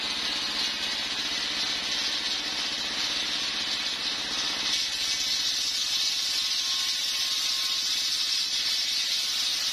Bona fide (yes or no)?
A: yes